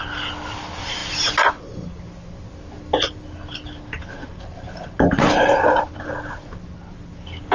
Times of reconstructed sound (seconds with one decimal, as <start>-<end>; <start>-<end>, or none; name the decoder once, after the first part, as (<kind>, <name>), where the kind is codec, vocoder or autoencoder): none